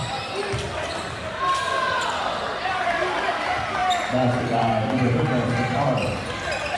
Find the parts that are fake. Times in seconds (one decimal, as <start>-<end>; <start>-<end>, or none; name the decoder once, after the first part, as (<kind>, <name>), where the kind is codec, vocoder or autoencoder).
none